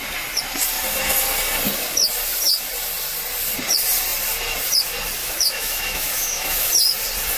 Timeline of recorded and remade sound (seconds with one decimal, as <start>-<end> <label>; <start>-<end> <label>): 0.0-5.2 recorded; 5.2-6.7 remade; 6.7-7.4 recorded